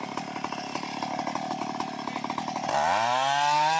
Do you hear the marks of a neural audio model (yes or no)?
no